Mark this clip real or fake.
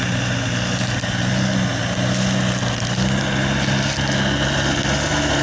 real